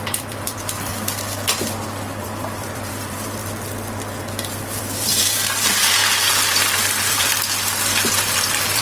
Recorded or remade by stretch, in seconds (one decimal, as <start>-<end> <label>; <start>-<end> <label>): 0.0-0.9 remade; 0.9-2.0 recorded; 2.0-3.4 remade; 3.4-4.8 recorded; 4.8-8.8 remade